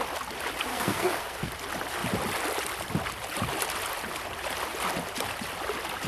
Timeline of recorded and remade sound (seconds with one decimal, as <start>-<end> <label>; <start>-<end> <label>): 0.0-0.7 recorded; 0.7-1.5 remade; 1.5-6.1 recorded